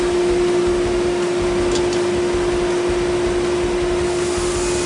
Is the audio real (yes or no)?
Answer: yes